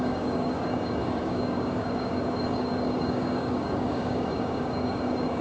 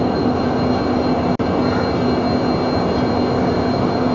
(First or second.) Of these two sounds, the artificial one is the first